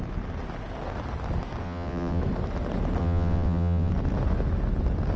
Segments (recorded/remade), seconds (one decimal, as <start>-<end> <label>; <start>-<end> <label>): 0.0-1.6 recorded; 1.6-2.2 remade; 2.2-3.0 recorded; 3.0-3.9 remade; 3.9-5.2 recorded